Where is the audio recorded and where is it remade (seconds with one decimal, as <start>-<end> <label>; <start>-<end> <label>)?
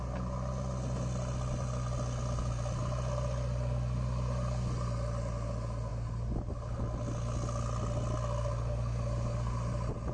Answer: 0.0-10.1 recorded